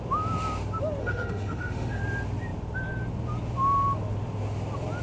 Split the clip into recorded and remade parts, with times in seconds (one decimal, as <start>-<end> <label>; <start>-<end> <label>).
0.0-1.0 recorded; 1.0-2.0 remade; 2.0-5.0 recorded